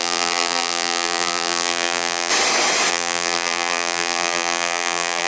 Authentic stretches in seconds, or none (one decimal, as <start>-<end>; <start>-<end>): 2.3-2.9

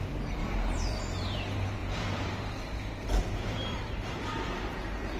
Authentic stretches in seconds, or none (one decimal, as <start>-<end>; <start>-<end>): none

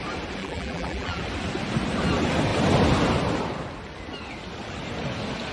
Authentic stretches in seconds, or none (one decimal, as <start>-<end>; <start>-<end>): 0.0-0.4; 1.2-5.5

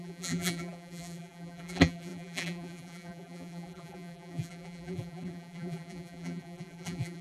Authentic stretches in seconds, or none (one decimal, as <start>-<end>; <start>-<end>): none

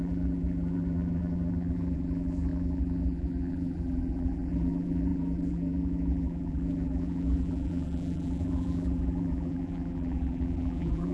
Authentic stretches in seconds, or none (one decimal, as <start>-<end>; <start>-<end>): none